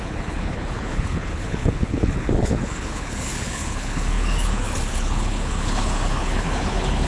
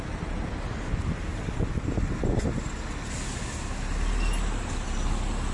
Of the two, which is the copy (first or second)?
first